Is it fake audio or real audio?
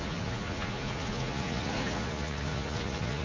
fake